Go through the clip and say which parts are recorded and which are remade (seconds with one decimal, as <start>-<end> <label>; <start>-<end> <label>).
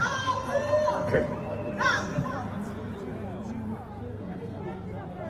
0.0-4.1 recorded; 4.1-4.6 remade; 4.6-5.3 recorded